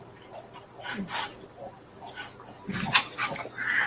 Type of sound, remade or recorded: recorded